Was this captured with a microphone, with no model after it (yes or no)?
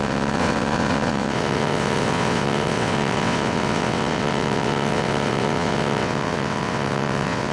no